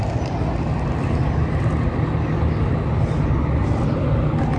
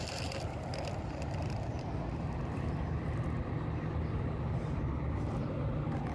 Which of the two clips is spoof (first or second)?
second